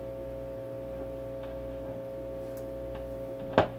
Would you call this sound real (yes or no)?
yes